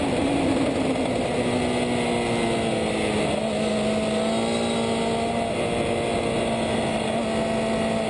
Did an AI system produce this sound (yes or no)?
no